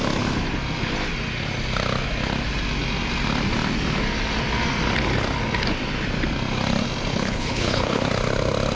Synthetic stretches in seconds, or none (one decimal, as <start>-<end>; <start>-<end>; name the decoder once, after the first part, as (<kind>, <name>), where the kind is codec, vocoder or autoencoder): 7.1-8.1 (codec, HILCodec)